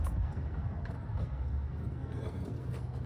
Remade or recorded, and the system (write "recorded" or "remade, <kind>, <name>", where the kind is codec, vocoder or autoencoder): remade, codec, SNAC